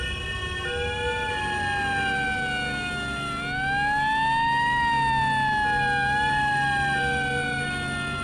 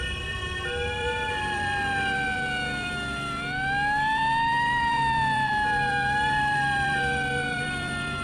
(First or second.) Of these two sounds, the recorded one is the first